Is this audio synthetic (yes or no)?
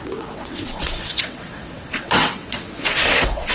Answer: yes